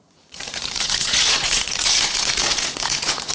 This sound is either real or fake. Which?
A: fake